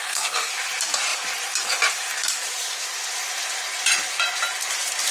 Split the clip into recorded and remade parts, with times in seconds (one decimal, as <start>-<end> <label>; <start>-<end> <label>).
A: 0.0-0.5 remade; 0.5-5.1 recorded